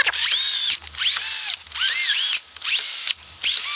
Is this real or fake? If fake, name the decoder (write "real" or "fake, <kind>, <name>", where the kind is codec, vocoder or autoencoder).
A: real